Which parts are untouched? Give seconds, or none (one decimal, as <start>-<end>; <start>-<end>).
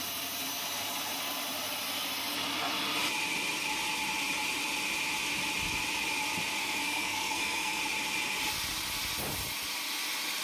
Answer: 0.0-6.6; 7.8-10.4